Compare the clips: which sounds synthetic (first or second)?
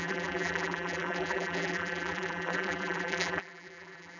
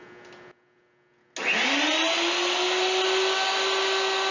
first